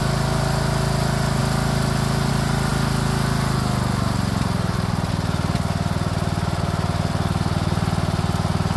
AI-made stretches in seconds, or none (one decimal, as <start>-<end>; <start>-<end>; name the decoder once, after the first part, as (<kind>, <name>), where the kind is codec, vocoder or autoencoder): none